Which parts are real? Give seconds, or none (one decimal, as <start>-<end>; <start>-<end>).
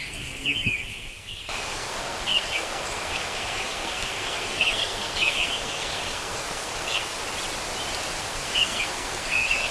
7.2-8.2